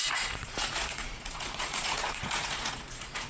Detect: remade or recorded remade